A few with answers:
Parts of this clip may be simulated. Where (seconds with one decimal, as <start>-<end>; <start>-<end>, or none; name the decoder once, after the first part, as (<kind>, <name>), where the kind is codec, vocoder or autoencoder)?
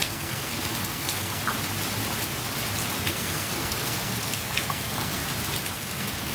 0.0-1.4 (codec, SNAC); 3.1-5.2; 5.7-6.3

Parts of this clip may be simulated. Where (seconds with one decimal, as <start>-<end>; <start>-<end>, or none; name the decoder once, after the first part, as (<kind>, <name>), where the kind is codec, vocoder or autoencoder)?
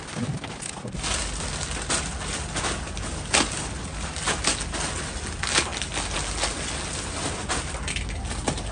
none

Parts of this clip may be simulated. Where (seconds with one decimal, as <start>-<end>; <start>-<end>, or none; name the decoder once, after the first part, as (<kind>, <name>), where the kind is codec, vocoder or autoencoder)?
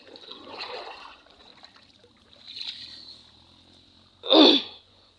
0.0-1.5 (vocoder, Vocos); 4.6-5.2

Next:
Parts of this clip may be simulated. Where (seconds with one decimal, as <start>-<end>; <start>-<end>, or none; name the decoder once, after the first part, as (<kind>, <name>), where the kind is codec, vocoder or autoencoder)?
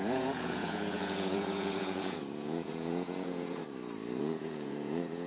0.0-3.6 (vocoder, Vocos); 4.2-5.3